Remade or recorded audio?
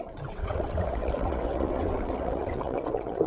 remade